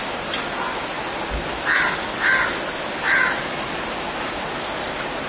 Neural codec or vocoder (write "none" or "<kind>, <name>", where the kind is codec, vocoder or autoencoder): none